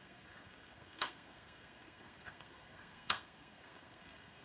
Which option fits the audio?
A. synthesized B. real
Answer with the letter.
A